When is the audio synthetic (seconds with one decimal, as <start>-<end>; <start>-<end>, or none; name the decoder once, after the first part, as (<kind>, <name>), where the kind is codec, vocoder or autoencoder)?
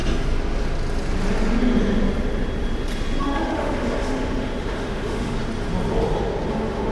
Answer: 3.2-5.4 (autoencoder, DAC-VAE); 6.5-6.9